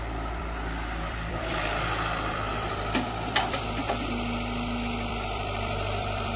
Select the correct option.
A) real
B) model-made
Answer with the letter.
B